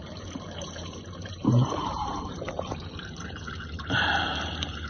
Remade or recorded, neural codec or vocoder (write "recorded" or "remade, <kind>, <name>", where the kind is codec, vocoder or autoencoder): remade, vocoder, BigVGAN v2